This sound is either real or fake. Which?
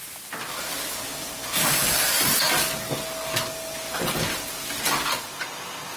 real